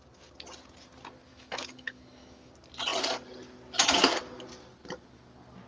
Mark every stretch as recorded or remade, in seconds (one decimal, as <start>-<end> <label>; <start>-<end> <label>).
0.0-1.3 recorded; 1.3-2.5 remade; 2.5-5.7 recorded

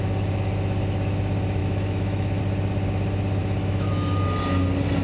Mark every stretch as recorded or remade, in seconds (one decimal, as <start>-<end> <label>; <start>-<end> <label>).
0.0-1.6 recorded; 1.6-2.4 remade; 2.4-3.4 recorded; 3.4-3.9 remade; 3.9-5.0 recorded

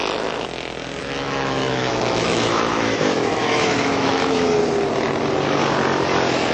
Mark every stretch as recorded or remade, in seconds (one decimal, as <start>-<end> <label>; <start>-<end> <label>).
0.0-1.0 recorded; 1.0-4.6 remade; 4.6-6.5 recorded

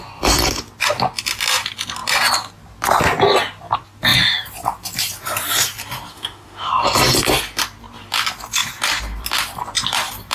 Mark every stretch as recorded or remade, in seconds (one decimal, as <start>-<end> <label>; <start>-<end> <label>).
0.0-6.1 recorded; 6.1-6.7 remade; 6.7-10.3 recorded

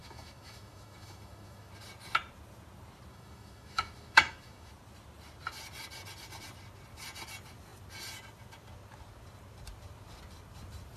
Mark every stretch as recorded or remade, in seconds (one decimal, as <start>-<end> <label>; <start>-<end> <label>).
0.0-1.7 remade; 1.7-3.1 recorded; 3.1-4.7 remade; 4.7-11.0 recorded

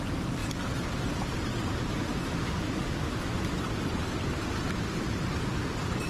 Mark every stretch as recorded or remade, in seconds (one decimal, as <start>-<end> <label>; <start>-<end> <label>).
0.0-2.1 recorded; 2.1-3.5 remade; 3.5-6.1 recorded